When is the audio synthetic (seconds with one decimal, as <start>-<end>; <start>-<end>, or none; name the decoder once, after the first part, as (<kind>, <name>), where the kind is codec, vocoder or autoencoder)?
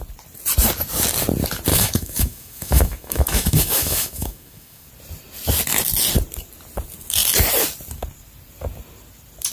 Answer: 1.7-4.9 (autoencoder, DAC-VAE)